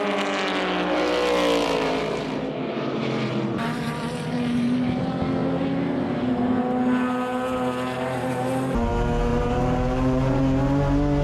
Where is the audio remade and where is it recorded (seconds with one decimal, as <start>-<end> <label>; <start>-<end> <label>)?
0.0-1.6 recorded; 1.6-5.0 remade; 5.0-9.3 recorded; 9.3-10.4 remade; 10.4-11.2 recorded